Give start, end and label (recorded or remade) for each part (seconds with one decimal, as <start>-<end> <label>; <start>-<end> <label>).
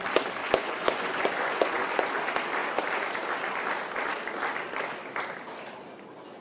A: 0.0-0.4 recorded; 0.4-2.1 remade; 2.1-6.4 recorded